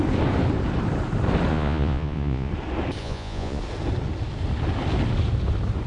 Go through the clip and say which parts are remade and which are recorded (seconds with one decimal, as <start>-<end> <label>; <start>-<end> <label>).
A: 0.0-1.5 recorded; 1.5-2.5 remade; 2.5-3.0 recorded; 3.0-3.6 remade; 3.6-5.9 recorded